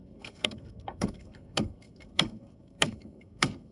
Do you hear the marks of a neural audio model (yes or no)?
yes